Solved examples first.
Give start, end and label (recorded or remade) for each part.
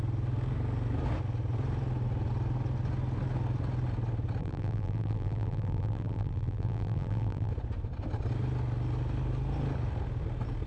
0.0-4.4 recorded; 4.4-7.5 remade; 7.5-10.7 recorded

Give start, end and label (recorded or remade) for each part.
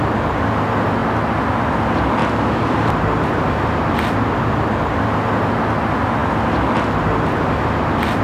0.0-8.2 recorded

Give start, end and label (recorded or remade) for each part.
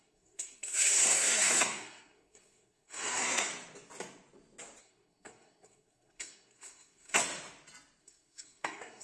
0.0-3.5 remade; 3.5-4.8 recorded; 4.8-7.2 remade; 7.2-8.0 recorded; 8.0-9.0 remade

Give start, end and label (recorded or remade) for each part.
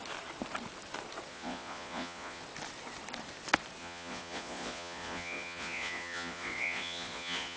0.0-1.3 recorded; 1.3-2.4 remade; 2.4-3.8 recorded; 3.8-7.6 remade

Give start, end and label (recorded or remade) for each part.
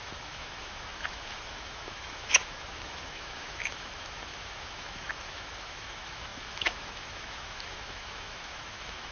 0.0-9.1 remade